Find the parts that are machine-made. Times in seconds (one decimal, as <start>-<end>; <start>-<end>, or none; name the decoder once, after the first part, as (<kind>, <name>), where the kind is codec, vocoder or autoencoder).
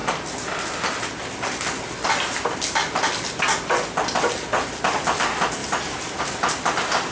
2.8-3.7 (vocoder, BigVGAN v2); 5.6-6.2